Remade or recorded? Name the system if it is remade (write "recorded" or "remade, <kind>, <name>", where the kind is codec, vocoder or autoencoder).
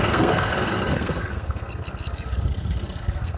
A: remade, codec, SNAC